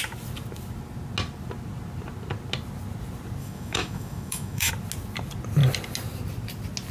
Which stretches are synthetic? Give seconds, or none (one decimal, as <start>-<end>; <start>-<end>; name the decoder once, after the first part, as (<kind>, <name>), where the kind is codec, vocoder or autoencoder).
3.4-4.7 (autoencoder, DAC-VAE)